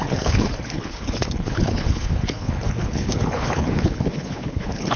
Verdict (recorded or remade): remade